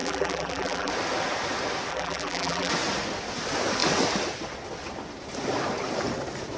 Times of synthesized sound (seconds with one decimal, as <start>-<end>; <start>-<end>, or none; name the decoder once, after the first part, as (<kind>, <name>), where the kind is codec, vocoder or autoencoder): 0.0-0.9 (vocoder, BigVGAN v2); 1.9-2.7